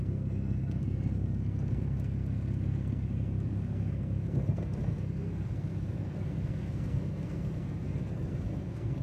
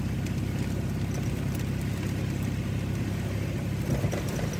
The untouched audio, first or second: second